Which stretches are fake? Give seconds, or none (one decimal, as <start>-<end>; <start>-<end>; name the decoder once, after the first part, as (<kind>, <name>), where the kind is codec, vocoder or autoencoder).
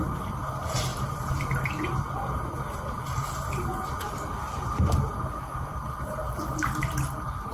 0.9-1.6 (vocoder, BigVGAN v2)